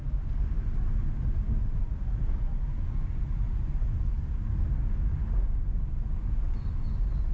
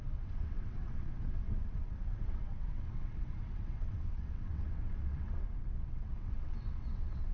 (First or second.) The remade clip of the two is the second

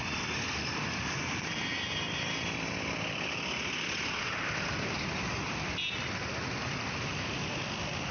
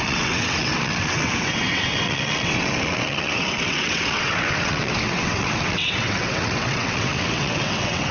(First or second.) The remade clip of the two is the second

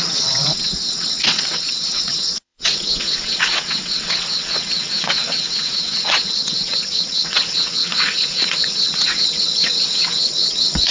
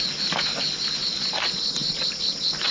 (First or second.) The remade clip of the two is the first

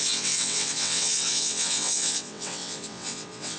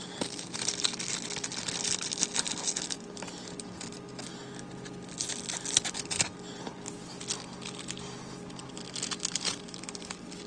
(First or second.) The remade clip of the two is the first